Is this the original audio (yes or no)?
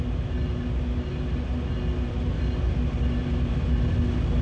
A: yes